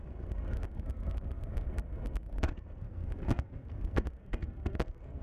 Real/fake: fake